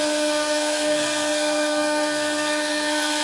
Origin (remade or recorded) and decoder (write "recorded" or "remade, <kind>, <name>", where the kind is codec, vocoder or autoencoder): remade, codec, SNAC